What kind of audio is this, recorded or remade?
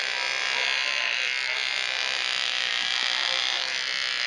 recorded